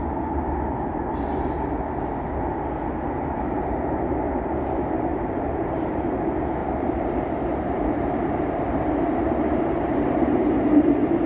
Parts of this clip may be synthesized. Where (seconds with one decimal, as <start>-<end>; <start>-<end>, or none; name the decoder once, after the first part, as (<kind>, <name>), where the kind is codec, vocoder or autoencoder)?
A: 5.1-6.0 (vocoder, BigVGAN v2); 6.6-7.1; 7.5-10.4